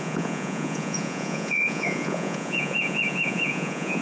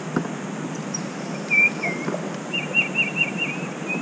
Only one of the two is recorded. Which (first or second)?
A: second